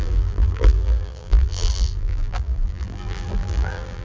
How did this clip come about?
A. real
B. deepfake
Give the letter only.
B